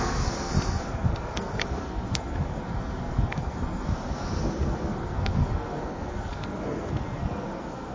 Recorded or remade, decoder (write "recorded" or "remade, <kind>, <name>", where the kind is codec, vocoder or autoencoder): remade, codec, SNAC